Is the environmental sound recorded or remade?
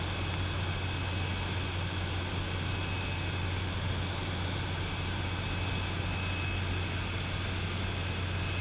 recorded